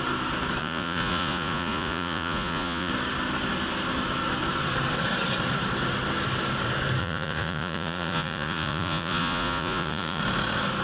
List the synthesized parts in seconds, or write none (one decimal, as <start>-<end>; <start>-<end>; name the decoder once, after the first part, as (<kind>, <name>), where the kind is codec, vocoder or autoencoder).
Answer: 0.6-2.9 (vocoder, Vocos); 7.0-10.2